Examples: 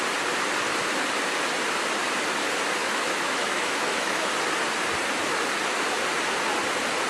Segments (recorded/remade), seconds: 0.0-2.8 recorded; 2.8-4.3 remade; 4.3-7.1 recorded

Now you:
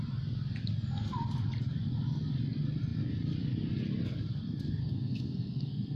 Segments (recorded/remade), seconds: 0.0-4.8 recorded; 4.8-6.0 remade

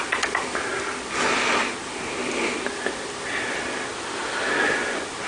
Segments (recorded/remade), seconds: 0.0-5.3 recorded

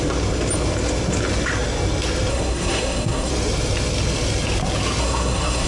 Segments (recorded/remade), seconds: 0.0-2.3 recorded; 2.3-3.3 remade; 3.3-5.0 recorded; 5.0-5.7 remade

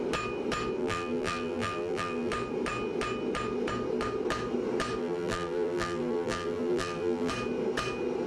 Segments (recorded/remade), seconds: 0.0-0.8 recorded; 0.8-2.3 remade; 2.3-5.0 recorded; 5.0-7.3 remade; 7.3-8.3 recorded